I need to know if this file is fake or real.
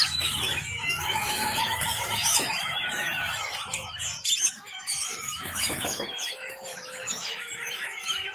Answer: fake